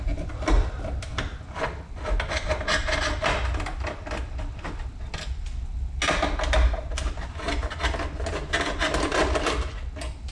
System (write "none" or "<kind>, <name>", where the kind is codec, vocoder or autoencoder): none